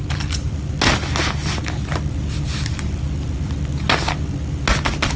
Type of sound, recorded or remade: recorded